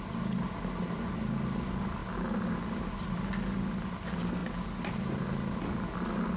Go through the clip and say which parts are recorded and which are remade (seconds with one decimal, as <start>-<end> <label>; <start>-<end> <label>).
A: 0.0-6.4 recorded